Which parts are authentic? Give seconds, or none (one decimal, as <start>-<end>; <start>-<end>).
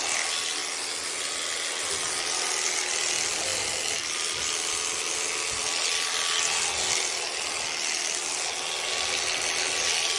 0.0-10.2